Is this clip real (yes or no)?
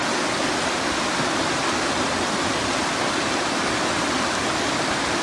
yes